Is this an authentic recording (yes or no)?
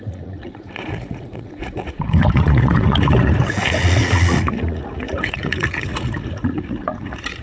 no